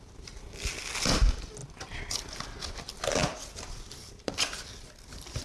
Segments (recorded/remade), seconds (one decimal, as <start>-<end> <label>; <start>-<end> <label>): 0.0-3.2 recorded; 3.2-4.5 remade; 4.5-5.4 recorded